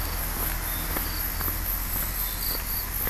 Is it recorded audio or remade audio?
recorded